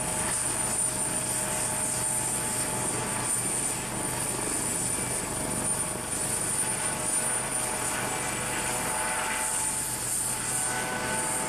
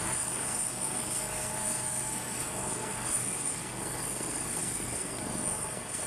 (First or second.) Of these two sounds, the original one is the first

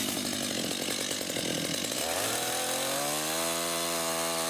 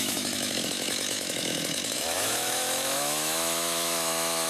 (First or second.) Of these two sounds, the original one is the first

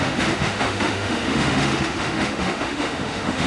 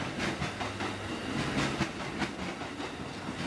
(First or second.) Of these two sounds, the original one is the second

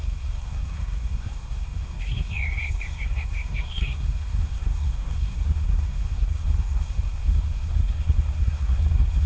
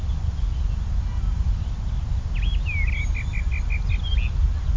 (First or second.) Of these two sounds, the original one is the second